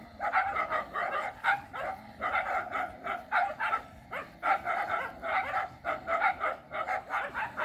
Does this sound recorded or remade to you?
recorded